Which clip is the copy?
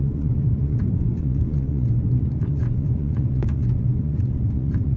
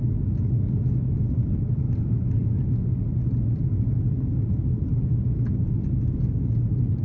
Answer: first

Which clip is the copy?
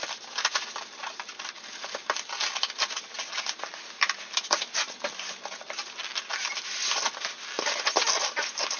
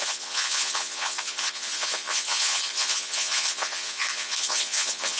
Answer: second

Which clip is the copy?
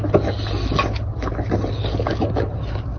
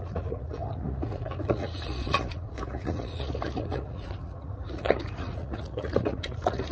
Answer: second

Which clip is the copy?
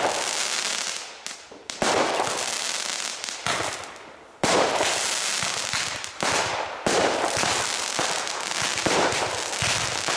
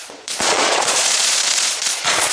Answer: second